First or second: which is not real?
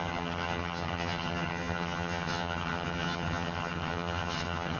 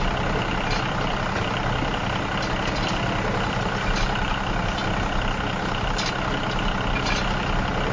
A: first